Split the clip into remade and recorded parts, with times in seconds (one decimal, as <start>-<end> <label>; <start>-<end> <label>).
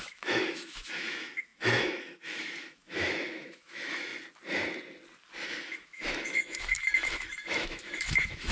0.0-4.1 remade; 4.1-5.6 recorded; 5.6-8.5 remade